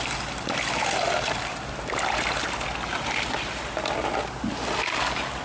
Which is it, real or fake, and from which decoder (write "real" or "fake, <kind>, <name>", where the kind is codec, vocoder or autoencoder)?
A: real